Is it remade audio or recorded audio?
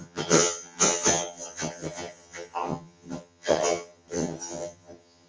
remade